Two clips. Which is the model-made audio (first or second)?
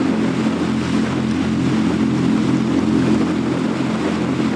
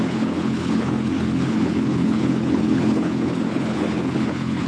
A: second